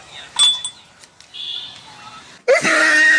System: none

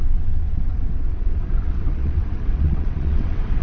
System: vocoder, WaveNeXt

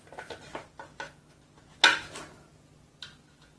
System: none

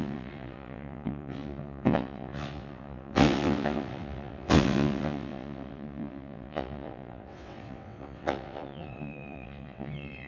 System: vocoder, WaveNeXt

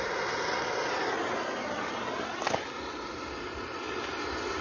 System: none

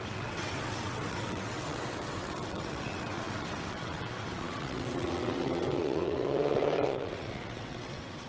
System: vocoder, WaveNeXt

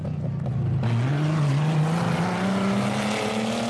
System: none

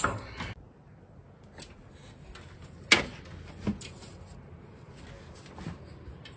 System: none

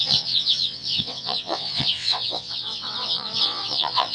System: vocoder, WaveNeXt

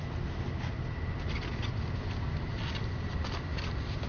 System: none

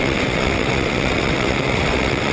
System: vocoder, WaveNeXt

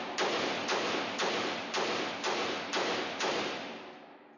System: none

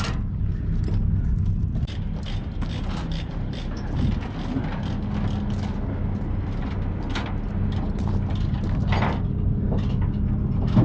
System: none